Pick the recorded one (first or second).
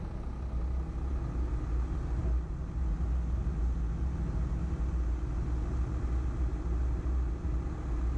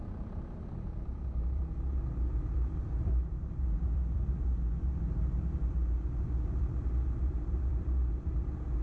first